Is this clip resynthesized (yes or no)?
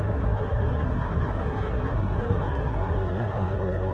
yes